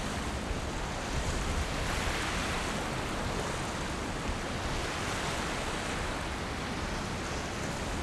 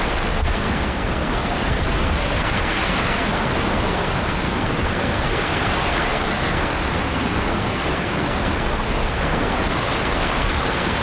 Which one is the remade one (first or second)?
second